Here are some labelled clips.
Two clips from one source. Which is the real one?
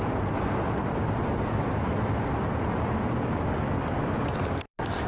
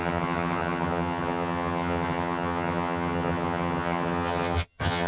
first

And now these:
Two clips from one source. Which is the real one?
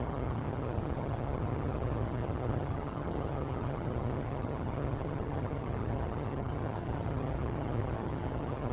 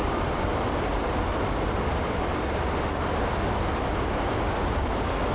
second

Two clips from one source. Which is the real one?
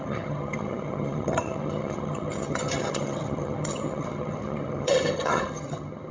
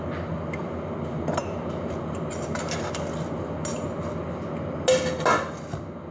second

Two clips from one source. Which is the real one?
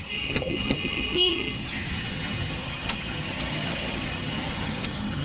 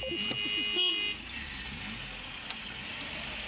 second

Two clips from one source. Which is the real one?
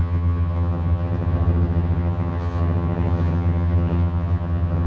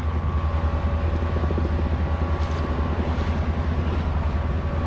second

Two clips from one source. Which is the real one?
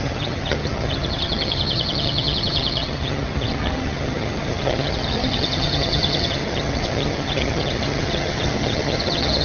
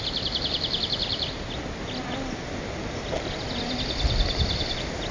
second